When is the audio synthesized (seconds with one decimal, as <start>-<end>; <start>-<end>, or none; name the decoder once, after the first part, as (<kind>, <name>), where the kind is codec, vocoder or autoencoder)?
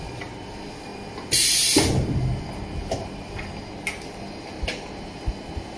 none